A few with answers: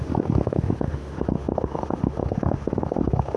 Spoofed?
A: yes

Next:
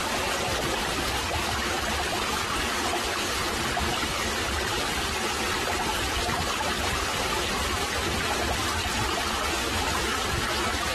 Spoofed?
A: yes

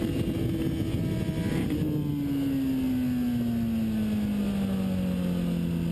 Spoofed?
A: no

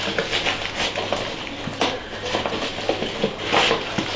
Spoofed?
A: no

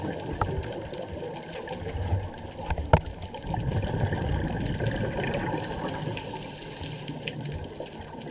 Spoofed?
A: no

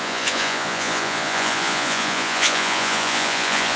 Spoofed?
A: yes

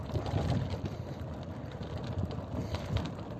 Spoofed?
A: no